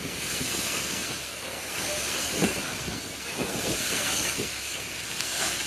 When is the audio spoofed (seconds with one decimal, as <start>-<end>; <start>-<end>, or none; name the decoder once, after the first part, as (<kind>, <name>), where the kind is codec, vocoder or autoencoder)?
0.0-5.7 (codec, SNAC)